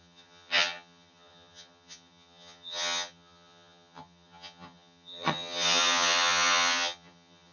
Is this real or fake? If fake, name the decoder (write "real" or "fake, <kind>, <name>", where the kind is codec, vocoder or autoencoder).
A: fake, vocoder, HiFi-GAN